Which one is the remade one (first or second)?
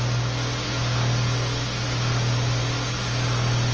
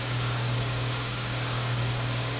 second